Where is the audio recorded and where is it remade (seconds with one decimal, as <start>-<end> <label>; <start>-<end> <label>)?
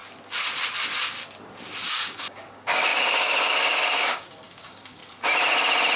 0.0-1.9 recorded; 1.9-5.0 remade; 5.0-6.0 recorded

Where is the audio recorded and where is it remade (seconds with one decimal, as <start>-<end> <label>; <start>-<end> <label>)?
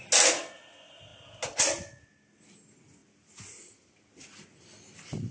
0.0-5.3 recorded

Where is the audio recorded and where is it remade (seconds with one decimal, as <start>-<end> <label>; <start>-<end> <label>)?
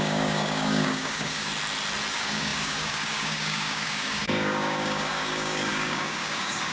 0.0-1.5 remade; 1.5-2.1 recorded; 2.1-6.7 remade